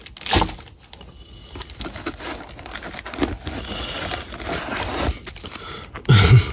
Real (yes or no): yes